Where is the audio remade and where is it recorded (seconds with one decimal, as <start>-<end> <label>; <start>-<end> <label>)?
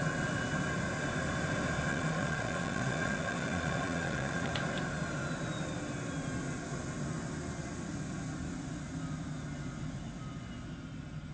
0.0-1.9 recorded; 1.9-4.5 remade; 4.5-11.3 recorded